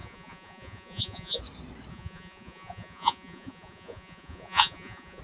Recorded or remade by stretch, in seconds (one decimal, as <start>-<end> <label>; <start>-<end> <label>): 0.0-1.4 remade; 1.4-1.9 recorded; 1.9-5.2 remade